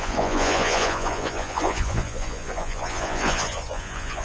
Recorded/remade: remade